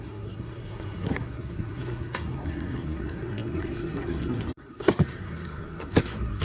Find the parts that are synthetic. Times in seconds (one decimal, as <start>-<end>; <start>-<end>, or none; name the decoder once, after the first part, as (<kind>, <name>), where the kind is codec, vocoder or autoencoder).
0.0-6.4 (codec, SNAC)